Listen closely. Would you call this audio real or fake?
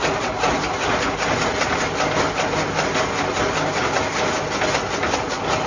real